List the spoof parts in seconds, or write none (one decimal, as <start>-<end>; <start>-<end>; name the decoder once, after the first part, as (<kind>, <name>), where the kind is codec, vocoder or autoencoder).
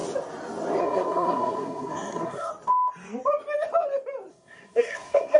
0.8-2.5 (codec, SNAC); 4.3-5.4